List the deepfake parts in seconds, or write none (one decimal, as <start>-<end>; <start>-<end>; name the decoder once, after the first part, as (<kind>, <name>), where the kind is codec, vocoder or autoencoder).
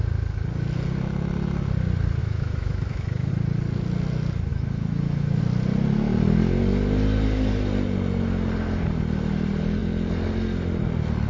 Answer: 2.2-3.3 (autoencoder, DAC-VAE); 4.5-5.4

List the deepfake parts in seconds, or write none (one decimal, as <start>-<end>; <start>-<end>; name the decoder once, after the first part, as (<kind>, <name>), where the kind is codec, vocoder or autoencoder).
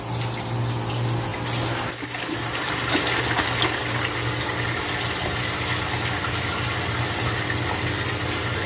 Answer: none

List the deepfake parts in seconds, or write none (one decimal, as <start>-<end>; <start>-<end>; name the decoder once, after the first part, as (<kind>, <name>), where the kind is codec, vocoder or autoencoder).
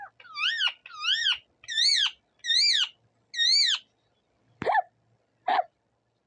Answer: none